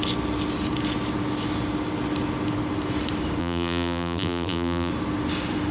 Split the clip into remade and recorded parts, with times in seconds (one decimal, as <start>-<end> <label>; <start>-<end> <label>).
0.0-3.4 recorded; 3.4-4.9 remade; 4.9-5.7 recorded